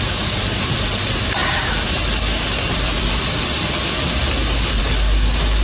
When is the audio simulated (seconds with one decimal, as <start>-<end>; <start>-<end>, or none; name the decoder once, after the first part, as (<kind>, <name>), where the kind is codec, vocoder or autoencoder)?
none